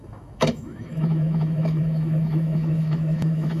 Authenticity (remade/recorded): remade